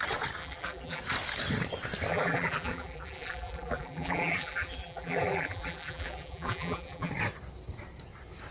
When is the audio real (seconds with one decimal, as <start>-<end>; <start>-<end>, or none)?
0.0-0.4; 1.0-2.1; 7.1-8.5